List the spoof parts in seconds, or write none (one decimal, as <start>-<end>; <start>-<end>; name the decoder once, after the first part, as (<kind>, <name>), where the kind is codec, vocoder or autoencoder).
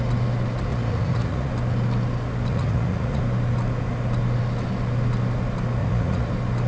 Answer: 0.7-1.5 (vocoder, Vocos); 2.5-3.2; 5.8-6.3